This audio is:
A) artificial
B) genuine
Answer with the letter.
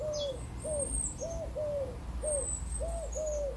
B